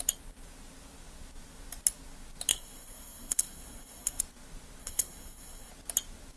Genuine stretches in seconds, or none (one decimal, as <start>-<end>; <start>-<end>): 0.0-2.5; 4.2-4.8; 5.7-6.4